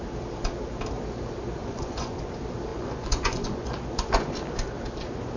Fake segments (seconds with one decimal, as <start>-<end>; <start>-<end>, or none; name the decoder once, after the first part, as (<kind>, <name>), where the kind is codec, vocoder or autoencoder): 1.6-2.3 (vocoder, Vocos); 2.7-4.3